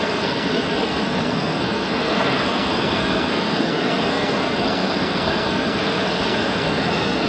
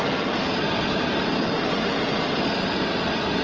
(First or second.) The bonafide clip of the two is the second